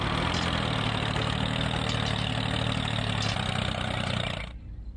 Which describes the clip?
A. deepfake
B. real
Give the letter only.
B